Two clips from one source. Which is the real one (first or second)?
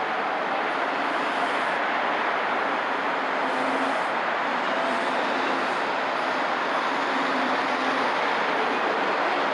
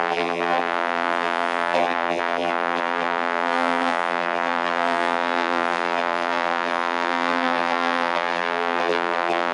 first